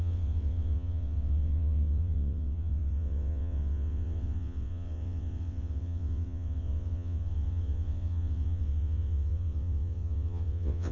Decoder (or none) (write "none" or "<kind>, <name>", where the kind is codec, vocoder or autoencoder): vocoder, WaveNeXt